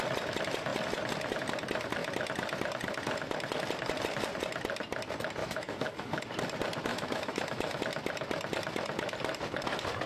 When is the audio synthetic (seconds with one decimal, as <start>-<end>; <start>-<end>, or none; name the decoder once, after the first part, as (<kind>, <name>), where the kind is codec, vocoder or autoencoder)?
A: 5.4-6.2 (autoencoder, DAC-VAE); 6.9-7.8